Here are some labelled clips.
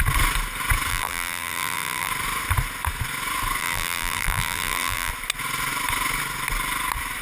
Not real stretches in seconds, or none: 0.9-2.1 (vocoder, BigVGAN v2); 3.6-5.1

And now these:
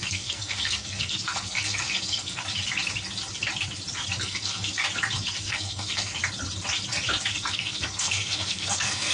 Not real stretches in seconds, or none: 0.0-2.4 (codec, SNAC); 4.2-4.8; 5.4-6.2; 7.3-9.1

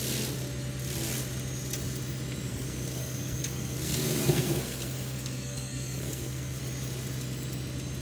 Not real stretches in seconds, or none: 2.5-6.6 (codec, SNAC)

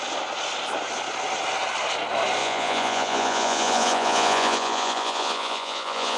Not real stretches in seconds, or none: 2.4-6.2 (vocoder, Vocos)

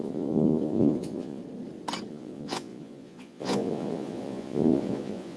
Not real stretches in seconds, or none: 0.0-1.4 (vocoder, Vocos); 2.1-5.4

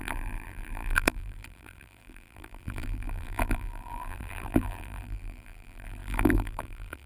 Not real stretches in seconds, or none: 0.0-7.1 (vocoder, BigVGAN v2)